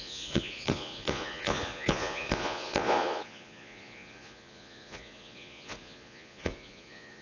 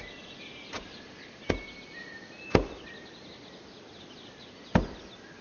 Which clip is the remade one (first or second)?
first